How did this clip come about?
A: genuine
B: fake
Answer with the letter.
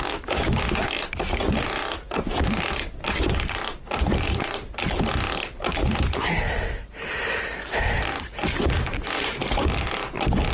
A